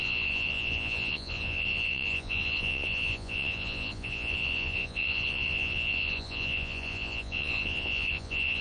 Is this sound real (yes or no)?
no